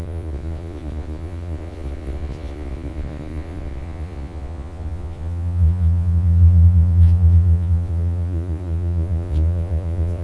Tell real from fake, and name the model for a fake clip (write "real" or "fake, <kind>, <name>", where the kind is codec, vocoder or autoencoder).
fake, vocoder, Vocos